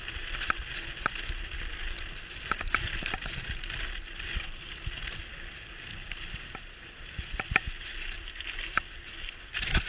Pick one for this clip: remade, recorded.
recorded